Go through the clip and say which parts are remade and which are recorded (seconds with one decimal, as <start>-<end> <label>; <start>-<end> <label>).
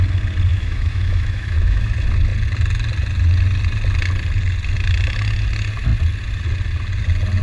0.0-0.5 recorded; 0.5-1.9 remade; 1.9-7.4 recorded